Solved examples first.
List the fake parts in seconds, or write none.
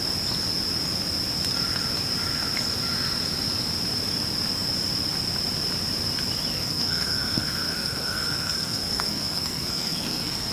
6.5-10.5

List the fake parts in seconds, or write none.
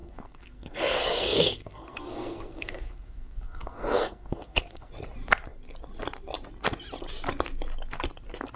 0.0-4.9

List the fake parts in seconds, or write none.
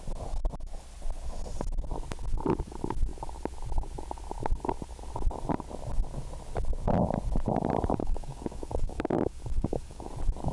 8.0-10.1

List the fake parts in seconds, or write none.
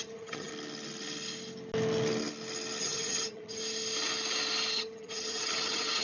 0.0-0.5; 2.8-3.6; 4.7-6.0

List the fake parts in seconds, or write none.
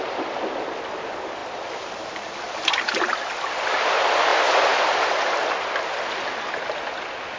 1.4-2.4; 4.3-5.1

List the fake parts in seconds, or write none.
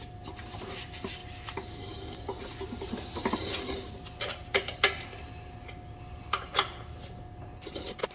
none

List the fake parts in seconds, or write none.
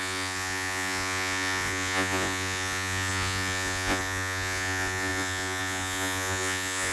0.0-6.9